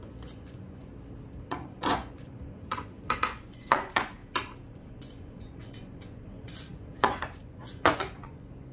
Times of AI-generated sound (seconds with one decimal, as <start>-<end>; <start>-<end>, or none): 0.0-0.9; 1.5-4.2; 4.7-8.7